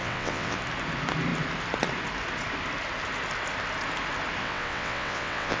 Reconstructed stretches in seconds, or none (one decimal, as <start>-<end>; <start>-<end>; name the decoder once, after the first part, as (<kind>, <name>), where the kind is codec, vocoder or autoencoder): 0.0-0.6 (vocoder, WaveNeXt); 4.4-5.6